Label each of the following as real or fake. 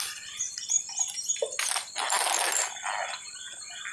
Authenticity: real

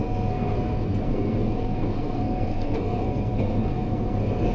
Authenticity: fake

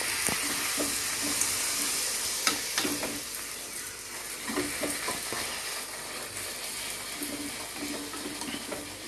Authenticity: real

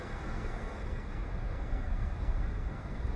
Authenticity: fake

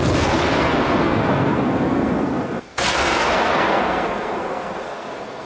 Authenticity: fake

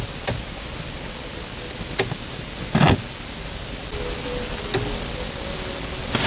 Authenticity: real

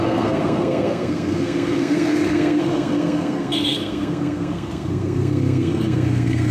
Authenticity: fake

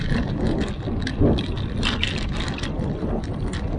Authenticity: real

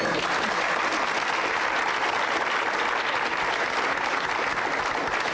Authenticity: real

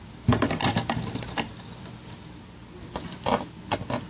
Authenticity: real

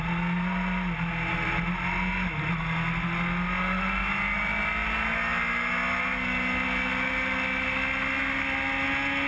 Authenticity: real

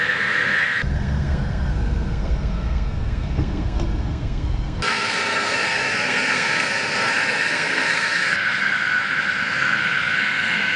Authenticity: fake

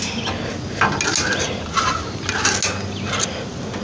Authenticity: real